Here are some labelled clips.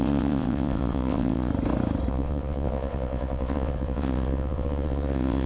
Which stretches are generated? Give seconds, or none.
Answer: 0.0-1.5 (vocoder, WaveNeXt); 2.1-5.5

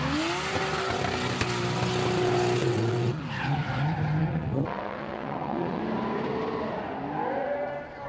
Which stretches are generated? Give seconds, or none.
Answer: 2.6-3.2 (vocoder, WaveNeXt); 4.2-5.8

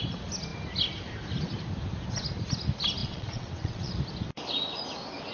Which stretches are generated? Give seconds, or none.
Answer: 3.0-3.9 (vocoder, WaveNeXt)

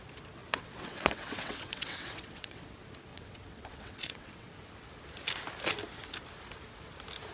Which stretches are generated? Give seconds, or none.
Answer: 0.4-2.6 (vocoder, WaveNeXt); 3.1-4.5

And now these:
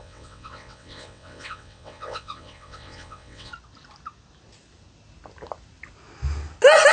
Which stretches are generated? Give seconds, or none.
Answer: 0.0-3.5 (vocoder, WaveNeXt)

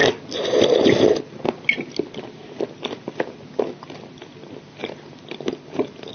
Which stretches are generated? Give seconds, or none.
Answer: none

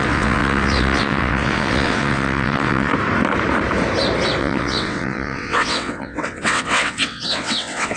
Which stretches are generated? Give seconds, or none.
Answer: 0.0-2.9 (vocoder, WaveNeXt); 4.4-8.0